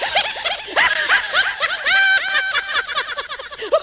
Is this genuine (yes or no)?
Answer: no